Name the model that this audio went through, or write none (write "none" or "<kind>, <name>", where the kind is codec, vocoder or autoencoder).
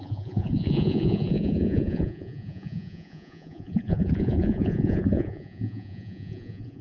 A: vocoder, Vocos